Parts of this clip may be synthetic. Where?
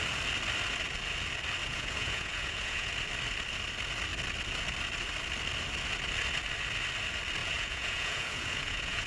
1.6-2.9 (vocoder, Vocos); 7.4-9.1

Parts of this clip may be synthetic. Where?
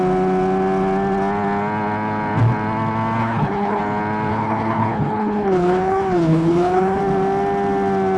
3.2-3.8 (codec, HILCodec); 4.3-7.0